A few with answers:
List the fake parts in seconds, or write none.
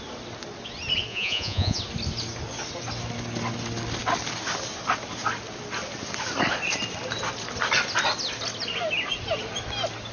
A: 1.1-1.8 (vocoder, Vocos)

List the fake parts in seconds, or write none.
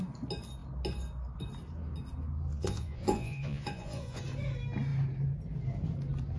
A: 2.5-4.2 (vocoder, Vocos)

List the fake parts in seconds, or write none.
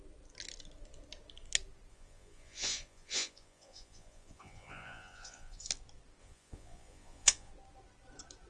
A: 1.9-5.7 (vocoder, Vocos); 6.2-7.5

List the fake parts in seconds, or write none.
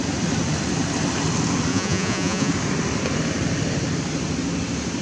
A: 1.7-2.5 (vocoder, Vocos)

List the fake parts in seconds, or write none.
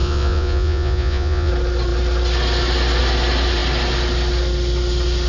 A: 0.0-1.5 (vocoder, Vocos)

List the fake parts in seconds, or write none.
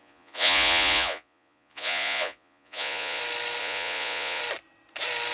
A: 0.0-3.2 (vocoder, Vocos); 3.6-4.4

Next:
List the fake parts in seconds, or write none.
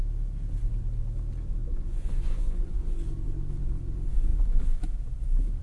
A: 1.6-2.8 (vocoder, Vocos)